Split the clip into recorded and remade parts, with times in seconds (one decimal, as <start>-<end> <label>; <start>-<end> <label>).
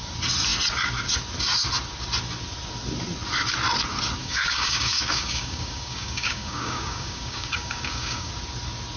0.0-4.2 recorded; 4.2-8.3 remade; 8.3-9.0 recorded